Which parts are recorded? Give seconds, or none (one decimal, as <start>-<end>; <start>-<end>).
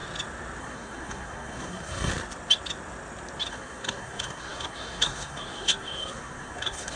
0.0-0.6; 2.1-3.5